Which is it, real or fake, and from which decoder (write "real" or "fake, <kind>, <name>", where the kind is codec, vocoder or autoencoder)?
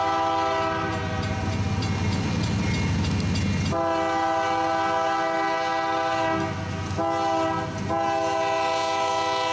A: real